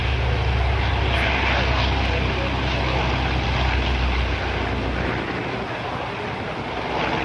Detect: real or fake real